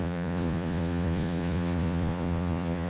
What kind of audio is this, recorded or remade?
remade